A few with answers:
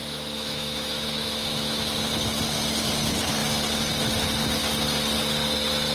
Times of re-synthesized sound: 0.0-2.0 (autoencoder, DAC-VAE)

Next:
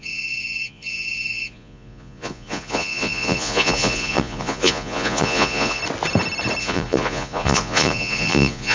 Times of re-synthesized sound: 0.0-5.8 (vocoder, Vocos); 6.6-8.7

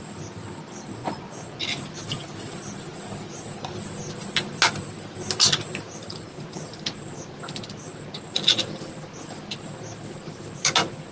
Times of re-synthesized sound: 1.0-1.6 (vocoder, Vocos)

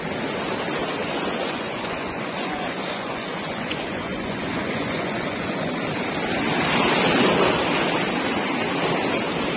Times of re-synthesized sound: 1.0-5.8 (vocoder, Vocos)

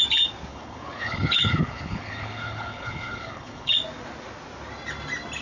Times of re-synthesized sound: 0.5-3.7 (codec, HILCodec)

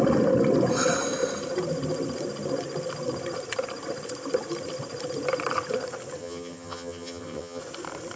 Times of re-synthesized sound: 6.2-7.6 (vocoder, HiFi-GAN)

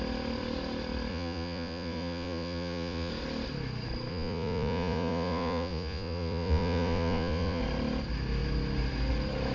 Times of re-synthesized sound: 1.1-3.1 (vocoder, Vocos); 4.1-7.6

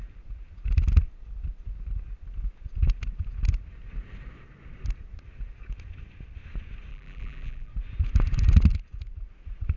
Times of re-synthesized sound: 6.9-7.7 (vocoder, BigVGAN v2)